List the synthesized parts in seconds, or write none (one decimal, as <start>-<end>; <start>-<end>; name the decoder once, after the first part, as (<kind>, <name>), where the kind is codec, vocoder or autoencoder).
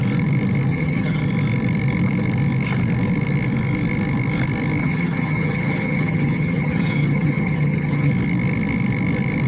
0.7-1.2 (vocoder, HiFi-GAN); 4.8-8.1